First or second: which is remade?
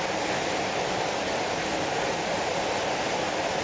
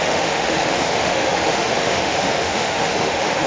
second